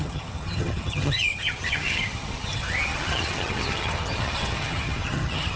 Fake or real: fake